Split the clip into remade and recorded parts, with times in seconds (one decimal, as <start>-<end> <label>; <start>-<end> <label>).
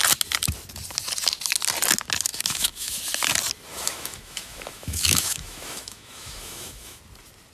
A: 0.0-2.3 recorded; 2.3-3.0 remade; 3.0-3.7 recorded; 3.7-7.0 remade; 7.0-7.5 recorded